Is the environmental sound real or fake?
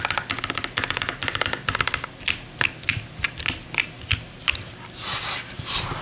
real